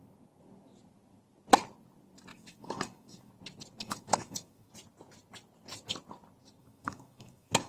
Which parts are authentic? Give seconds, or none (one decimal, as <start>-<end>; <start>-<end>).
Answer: 0.0-2.3; 3.3-3.8; 4.7-6.6

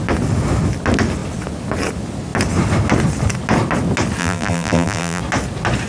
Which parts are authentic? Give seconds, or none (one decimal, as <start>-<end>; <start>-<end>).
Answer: 0.0-4.2; 5.2-5.9

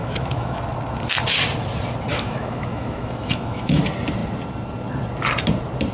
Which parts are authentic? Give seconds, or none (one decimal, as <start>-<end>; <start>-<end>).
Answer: 0.6-2.1; 3.8-5.9

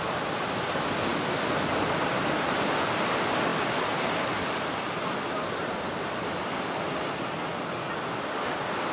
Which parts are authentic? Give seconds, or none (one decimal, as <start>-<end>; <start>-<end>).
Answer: 0.0-8.9

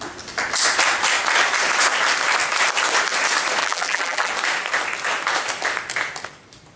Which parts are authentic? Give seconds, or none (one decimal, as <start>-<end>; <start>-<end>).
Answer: 0.0-3.6; 4.3-6.8

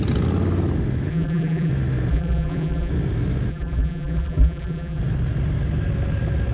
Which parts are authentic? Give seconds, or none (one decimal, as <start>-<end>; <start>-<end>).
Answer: 0.0-1.1; 1.7-2.1; 2.9-3.5; 5.0-6.5